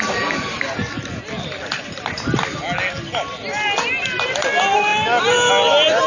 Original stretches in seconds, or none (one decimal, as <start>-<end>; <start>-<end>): 0.0-6.1